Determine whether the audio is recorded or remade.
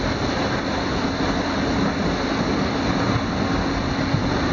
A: recorded